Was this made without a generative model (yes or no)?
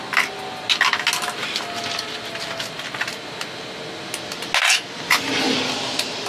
yes